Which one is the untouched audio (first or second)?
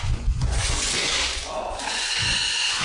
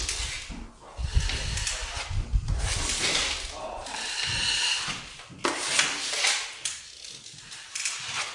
second